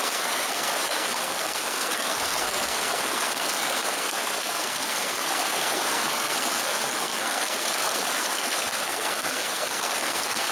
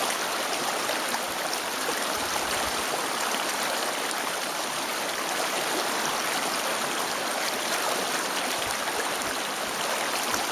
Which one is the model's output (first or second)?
first